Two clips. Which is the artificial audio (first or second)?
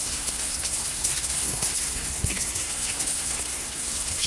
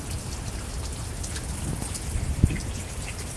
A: first